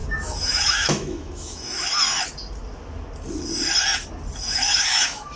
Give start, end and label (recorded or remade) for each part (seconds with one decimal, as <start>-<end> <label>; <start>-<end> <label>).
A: 0.0-1.9 remade; 1.9-4.4 recorded; 4.4-5.4 remade